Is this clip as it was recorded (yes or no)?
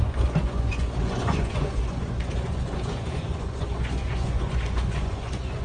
no